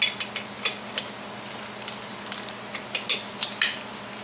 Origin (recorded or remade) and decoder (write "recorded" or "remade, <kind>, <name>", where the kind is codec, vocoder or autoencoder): recorded